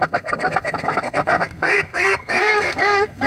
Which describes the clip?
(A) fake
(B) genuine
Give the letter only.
A